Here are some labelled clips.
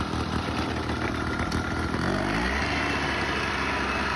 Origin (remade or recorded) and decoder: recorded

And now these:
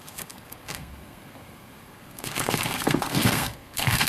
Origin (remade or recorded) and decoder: remade, codec, SNAC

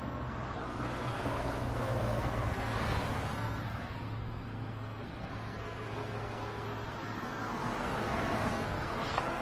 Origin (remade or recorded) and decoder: remade, codec, SNAC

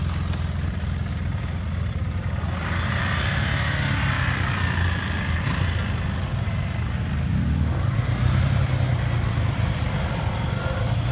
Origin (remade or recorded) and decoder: recorded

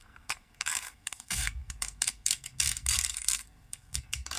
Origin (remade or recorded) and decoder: remade, codec, SNAC